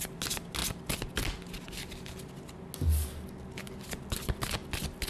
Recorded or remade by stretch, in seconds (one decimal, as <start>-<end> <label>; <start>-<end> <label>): 0.0-5.1 recorded